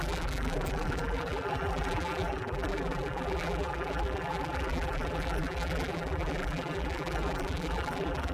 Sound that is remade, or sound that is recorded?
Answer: remade